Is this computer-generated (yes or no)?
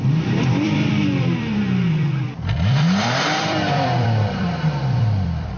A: yes